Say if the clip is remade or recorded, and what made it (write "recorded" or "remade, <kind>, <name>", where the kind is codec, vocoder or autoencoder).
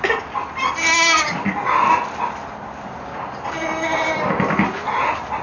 recorded